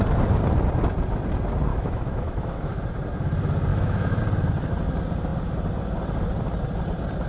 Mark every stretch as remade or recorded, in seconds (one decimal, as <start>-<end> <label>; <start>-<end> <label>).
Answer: 0.0-1.7 recorded; 1.7-2.8 remade; 2.8-3.7 recorded; 3.7-4.2 remade; 4.2-7.3 recorded